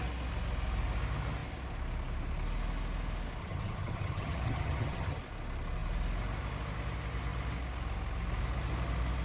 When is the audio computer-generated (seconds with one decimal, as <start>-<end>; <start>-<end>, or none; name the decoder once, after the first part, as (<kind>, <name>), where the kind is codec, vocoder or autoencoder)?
3.4-5.2 (vocoder, HiFi-GAN)